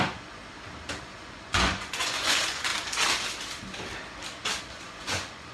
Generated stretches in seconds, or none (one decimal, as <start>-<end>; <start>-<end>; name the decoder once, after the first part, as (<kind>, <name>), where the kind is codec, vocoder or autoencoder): 0.0-0.4 (vocoder, Vocos); 1.0-2.7; 4.6-5.5